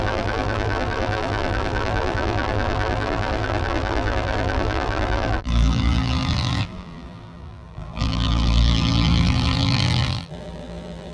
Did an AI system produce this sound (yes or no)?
yes